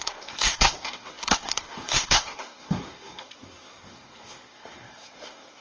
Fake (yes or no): yes